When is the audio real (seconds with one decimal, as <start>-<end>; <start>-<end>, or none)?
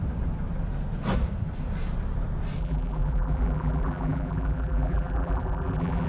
0.0-2.6